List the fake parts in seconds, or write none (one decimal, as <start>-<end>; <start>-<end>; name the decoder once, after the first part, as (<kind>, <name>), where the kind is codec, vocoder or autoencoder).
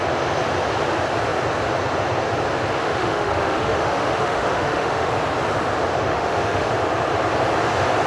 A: 2.8-5.1 (autoencoder, DAC-VAE); 6.1-6.7